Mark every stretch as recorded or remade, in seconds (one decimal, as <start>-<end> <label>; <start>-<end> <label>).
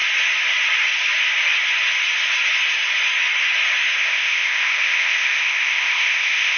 0.0-4.0 recorded; 4.0-6.6 remade